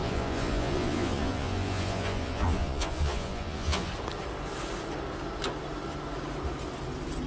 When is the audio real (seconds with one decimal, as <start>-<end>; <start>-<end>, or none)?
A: 3.9-7.3